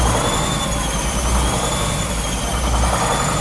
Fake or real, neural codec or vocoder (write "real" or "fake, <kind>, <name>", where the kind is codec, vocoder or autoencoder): real